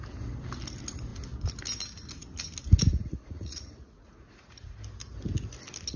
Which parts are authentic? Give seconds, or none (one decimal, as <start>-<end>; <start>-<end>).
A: 0.0-2.9; 4.8-6.0